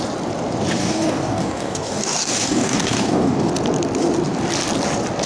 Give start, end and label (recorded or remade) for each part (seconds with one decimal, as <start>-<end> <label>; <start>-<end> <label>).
0.0-0.8 recorded; 0.8-3.5 remade; 3.5-5.3 recorded